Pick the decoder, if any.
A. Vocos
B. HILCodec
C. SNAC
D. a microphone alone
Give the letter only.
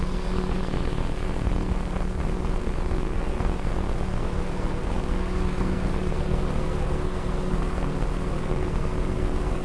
C